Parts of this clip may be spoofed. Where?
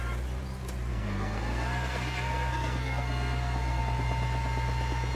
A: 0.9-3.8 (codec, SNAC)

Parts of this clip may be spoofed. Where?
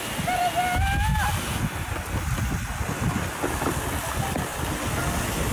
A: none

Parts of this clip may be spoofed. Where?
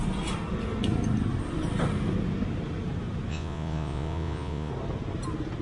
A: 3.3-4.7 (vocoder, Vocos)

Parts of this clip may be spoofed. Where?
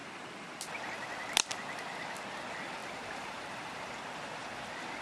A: 2.8-3.9 (vocoder, BigVGAN v2)